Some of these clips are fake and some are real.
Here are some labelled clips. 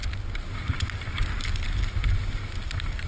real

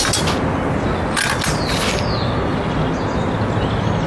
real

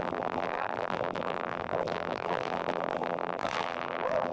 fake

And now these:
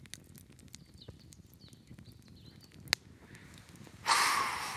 real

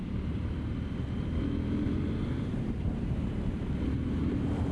fake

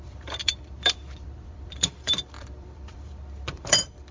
fake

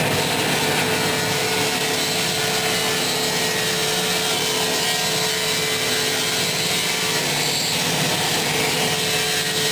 real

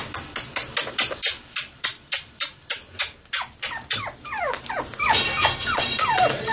fake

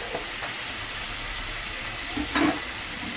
fake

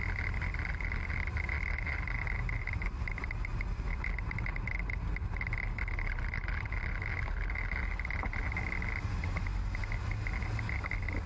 real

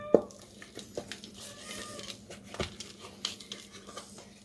real